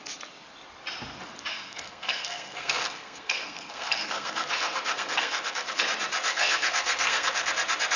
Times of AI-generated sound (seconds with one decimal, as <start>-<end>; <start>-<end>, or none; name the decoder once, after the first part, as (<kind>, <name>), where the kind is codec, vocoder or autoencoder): 1.5-5.8 (codec, SNAC); 6.3-7.5